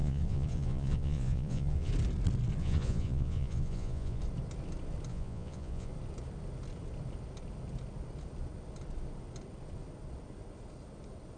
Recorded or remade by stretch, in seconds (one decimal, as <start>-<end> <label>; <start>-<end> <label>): 0.0-1.9 remade; 1.9-2.6 recorded; 2.6-4.2 remade; 4.2-5.1 recorded; 5.1-5.9 remade; 5.9-11.4 recorded